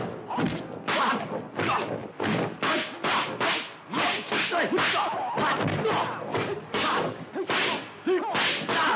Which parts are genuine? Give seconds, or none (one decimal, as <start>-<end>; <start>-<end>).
0.0-6.3; 7.3-9.0